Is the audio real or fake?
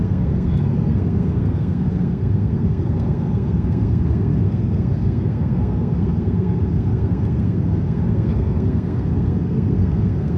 fake